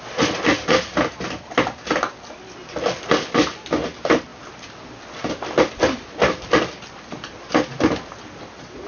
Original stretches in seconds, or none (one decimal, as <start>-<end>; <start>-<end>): 0.0-8.9